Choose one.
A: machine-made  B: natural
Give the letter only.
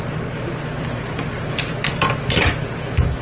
B